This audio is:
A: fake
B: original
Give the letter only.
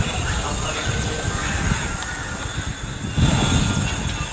B